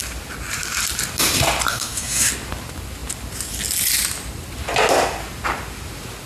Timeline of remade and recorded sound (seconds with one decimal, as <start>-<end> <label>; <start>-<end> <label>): 0.0-1.7 recorded; 1.7-2.3 remade; 2.3-6.3 recorded